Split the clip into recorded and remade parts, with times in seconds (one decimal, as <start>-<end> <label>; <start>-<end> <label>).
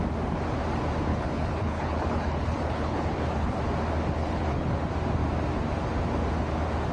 0.0-1.1 recorded; 1.1-3.6 remade; 3.6-4.2 recorded; 4.2-4.7 remade; 4.7-6.9 recorded